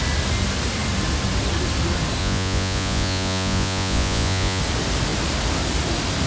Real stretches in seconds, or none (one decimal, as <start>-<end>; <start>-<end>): 0.0-2.2; 4.6-6.3